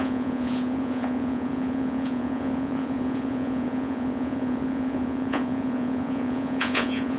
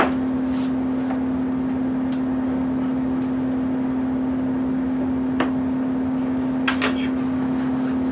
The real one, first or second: second